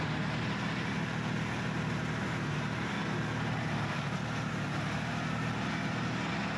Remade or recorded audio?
recorded